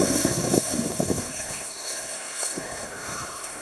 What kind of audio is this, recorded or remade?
remade